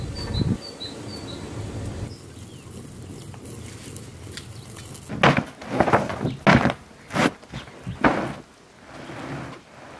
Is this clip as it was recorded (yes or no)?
yes